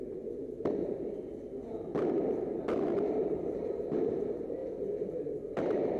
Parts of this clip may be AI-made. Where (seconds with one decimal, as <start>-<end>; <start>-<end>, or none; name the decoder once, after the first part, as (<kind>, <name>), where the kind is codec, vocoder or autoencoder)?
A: 0.0-0.4 (vocoder, BigVGAN v2); 1.9-6.0